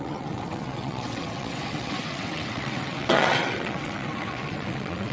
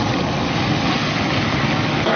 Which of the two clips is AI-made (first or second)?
first